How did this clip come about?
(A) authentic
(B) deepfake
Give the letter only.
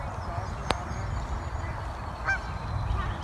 A